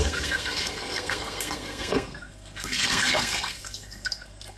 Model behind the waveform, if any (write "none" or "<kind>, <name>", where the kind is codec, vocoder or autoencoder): codec, SNAC